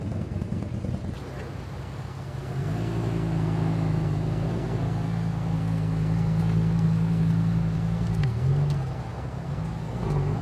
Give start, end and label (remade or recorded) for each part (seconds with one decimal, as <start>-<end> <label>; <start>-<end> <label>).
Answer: 0.0-0.7 remade; 0.7-1.8 recorded; 1.8-10.4 remade